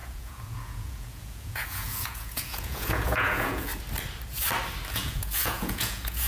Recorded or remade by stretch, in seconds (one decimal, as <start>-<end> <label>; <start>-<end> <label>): 0.0-3.7 remade; 3.7-4.9 recorded; 4.9-6.3 remade